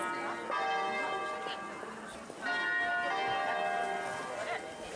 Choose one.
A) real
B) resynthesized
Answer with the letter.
A